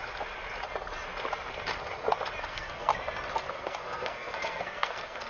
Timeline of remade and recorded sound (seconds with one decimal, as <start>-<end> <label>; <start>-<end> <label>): 0.0-2.4 recorded; 2.4-2.9 remade; 2.9-3.5 recorded; 3.5-5.3 remade